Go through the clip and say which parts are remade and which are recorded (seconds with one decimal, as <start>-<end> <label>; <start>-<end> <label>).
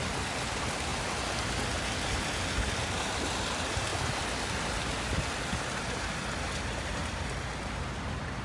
0.0-8.4 recorded